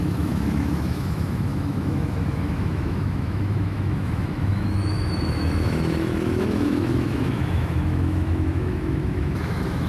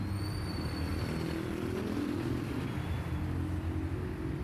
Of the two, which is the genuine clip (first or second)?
second